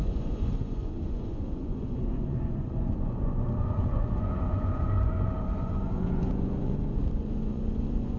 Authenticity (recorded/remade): remade